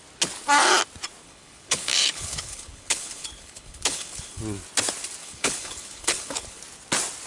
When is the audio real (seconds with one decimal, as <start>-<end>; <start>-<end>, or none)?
0.0-1.2; 4.4-5.2; 6.6-7.3